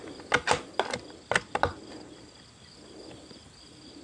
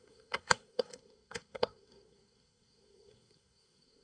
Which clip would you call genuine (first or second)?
first